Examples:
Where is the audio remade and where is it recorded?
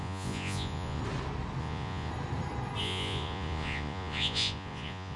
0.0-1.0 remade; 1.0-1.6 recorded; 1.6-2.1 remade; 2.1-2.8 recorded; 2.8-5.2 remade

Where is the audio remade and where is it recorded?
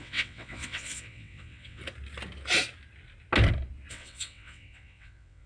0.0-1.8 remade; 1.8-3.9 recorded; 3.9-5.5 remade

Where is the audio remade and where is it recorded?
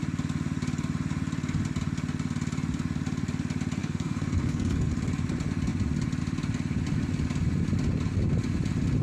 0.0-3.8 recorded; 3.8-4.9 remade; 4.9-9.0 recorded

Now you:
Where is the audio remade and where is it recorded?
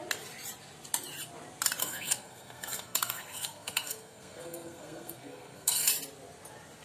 0.0-1.8 recorded; 1.8-5.9 remade; 5.9-6.8 recorded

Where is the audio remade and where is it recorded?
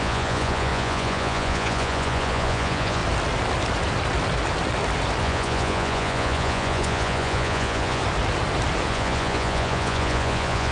0.0-3.0 remade; 3.0-5.2 recorded; 5.2-8.0 remade; 8.0-8.9 recorded; 8.9-10.7 remade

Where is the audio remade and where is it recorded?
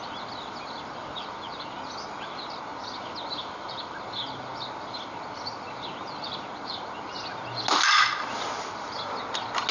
0.0-9.7 recorded